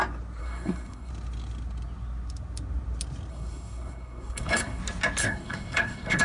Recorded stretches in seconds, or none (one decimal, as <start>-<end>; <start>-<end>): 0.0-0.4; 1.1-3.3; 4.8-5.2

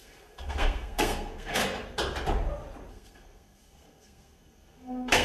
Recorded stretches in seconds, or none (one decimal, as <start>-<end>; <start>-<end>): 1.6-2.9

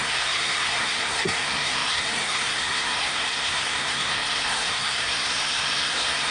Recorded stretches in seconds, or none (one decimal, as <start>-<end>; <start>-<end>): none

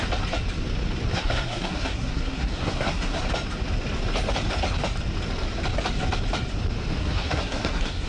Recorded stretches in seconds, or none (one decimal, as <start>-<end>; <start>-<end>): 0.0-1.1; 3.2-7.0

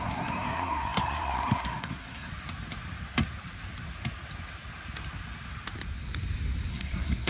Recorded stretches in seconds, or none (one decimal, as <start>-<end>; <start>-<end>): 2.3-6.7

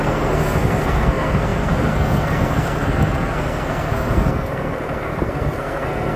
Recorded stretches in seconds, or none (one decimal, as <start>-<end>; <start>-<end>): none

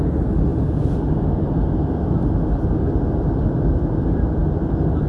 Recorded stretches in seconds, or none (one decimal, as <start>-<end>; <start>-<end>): 0.0-5.1

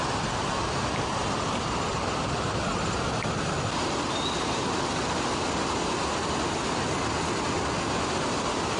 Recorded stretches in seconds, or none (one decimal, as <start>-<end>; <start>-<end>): 0.0-8.8